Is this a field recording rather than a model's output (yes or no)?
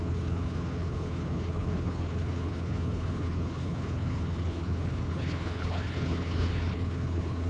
no